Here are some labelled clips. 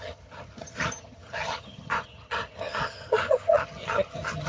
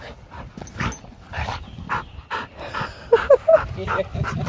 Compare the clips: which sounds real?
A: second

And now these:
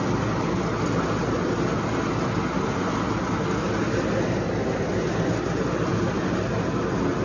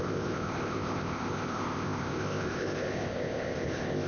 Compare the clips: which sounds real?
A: first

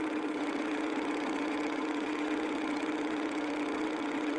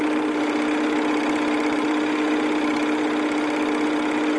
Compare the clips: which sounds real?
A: second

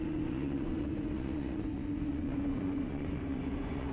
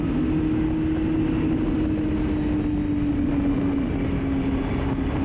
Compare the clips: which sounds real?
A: second